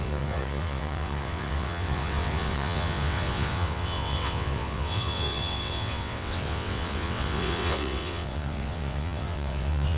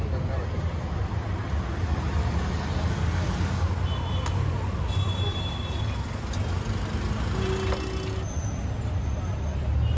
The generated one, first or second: first